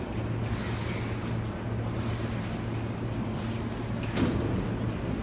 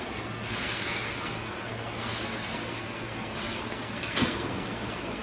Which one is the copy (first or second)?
second